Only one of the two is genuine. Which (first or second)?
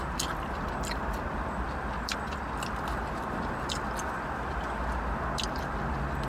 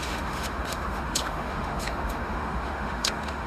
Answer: first